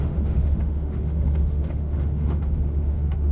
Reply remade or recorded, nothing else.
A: remade